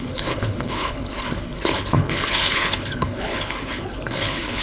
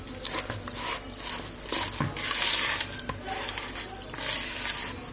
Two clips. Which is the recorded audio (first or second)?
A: second